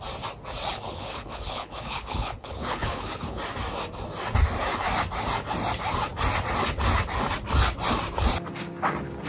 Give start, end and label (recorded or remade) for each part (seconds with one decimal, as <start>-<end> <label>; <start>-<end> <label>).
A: 0.0-0.7 recorded; 0.7-3.4 remade; 3.4-9.3 recorded